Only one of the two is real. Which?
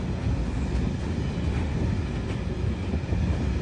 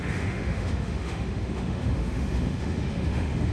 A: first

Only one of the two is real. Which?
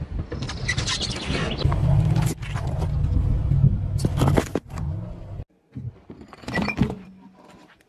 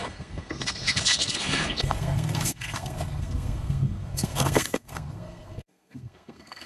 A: first